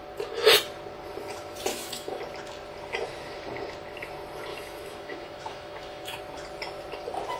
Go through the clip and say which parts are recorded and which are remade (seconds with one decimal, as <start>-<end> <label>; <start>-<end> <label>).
0.0-1.7 recorded; 1.7-2.2 remade; 2.2-4.5 recorded; 4.5-6.2 remade; 6.2-7.4 recorded